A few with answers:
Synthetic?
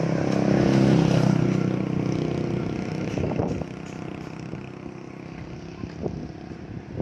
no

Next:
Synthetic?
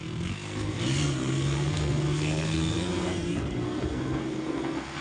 yes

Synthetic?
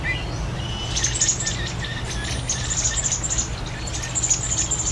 no